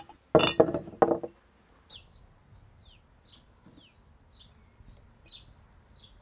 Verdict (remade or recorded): recorded